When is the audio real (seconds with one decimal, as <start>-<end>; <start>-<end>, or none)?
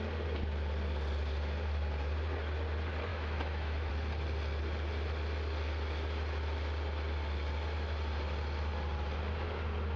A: 0.0-3.1; 3.9-10.0